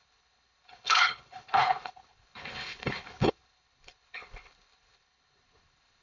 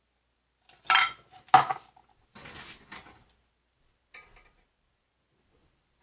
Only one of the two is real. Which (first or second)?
second